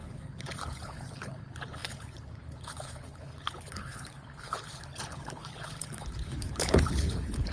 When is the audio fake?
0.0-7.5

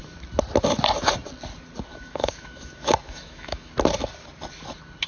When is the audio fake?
1.9-3.7

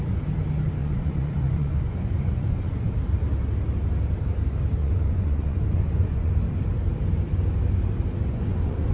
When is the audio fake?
0.8-2.9; 4.8-6.3; 8.2-8.9